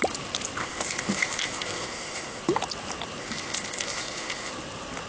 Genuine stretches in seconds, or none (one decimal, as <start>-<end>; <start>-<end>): 0.0-0.6; 2.4-3.2; 4.5-5.1